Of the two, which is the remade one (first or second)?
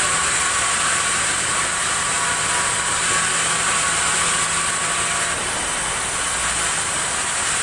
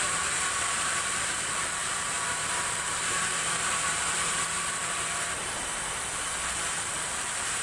second